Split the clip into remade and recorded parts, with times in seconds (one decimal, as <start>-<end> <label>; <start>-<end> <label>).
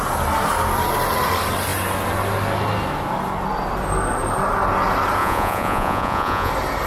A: 0.0-5.2 recorded; 5.2-6.5 remade; 6.5-6.9 recorded